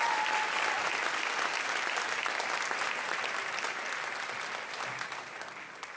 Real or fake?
real